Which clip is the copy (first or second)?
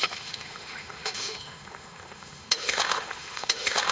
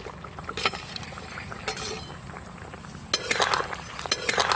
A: first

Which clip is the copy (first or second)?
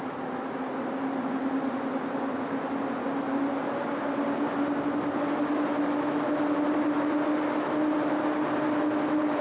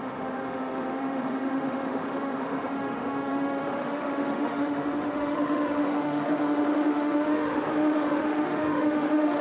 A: second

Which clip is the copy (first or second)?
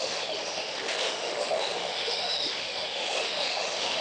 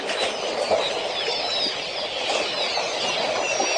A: first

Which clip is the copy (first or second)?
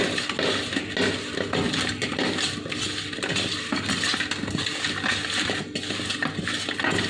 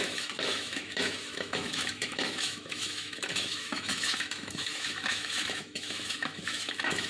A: second